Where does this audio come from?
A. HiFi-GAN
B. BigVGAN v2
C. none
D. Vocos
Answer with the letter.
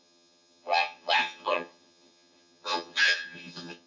A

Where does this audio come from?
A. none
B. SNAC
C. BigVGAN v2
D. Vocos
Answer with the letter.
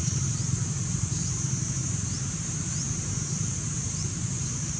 C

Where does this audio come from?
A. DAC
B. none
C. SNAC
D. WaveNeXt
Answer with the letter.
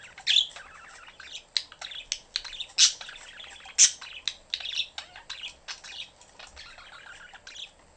B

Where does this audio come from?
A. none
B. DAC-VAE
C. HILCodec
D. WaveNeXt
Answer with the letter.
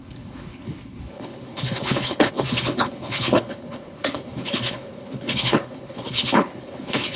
C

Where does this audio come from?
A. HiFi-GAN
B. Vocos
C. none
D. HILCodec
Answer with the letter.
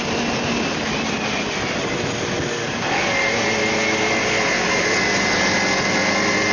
C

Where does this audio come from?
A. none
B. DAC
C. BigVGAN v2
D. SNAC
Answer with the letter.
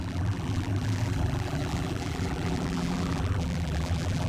C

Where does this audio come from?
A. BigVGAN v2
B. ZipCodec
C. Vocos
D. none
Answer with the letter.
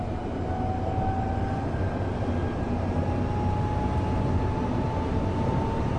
D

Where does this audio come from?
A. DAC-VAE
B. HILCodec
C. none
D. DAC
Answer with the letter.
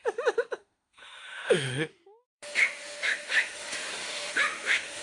A